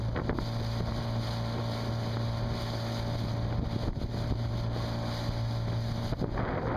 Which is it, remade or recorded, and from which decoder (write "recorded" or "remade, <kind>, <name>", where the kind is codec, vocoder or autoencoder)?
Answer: recorded